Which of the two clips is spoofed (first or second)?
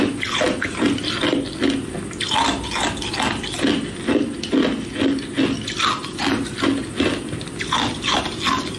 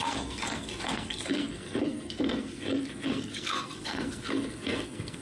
second